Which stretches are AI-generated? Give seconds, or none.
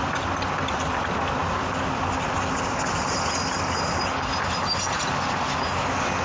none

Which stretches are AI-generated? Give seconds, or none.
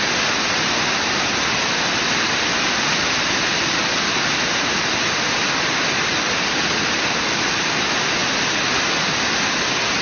none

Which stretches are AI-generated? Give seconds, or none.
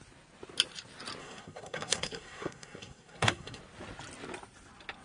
1.2-3.6 (codec, SNAC)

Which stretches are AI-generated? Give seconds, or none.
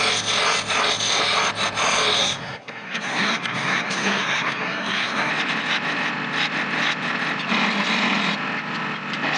2.2-5.3 (codec, SNAC)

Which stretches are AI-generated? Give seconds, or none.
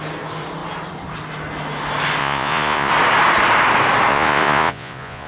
2.2-2.9 (vocoder, Vocos); 4.1-5.3